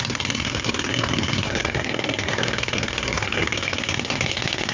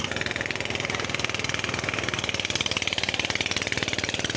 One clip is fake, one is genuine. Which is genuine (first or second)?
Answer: second